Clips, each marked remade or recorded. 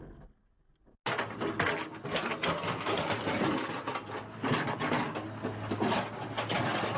recorded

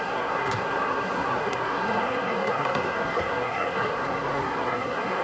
remade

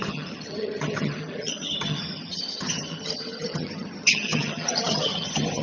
remade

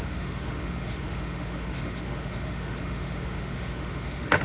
remade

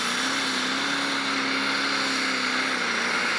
recorded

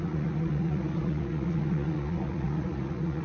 remade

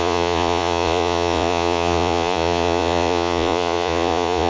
remade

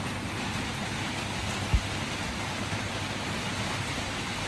recorded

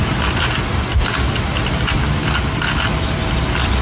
recorded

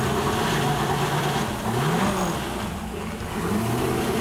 recorded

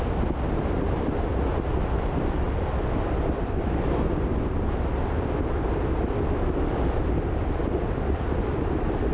recorded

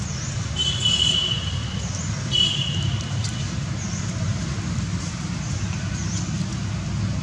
remade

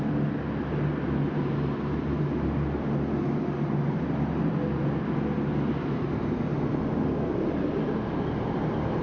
recorded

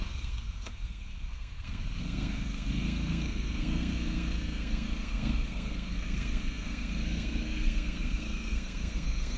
remade